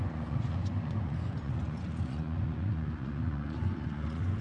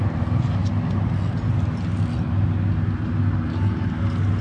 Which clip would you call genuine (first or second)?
second